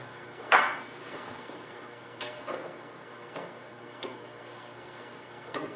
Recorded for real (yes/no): no